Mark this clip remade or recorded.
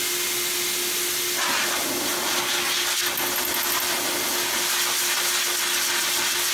recorded